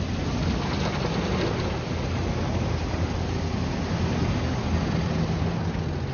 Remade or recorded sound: recorded